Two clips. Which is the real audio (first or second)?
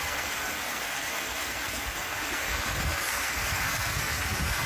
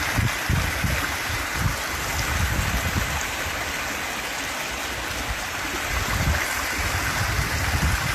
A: second